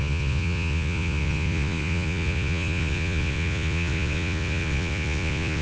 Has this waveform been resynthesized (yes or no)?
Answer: yes